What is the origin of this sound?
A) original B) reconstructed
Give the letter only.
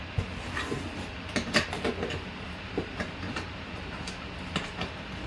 A